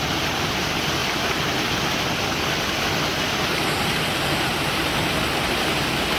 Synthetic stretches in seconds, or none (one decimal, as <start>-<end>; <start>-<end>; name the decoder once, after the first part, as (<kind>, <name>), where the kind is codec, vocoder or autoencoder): none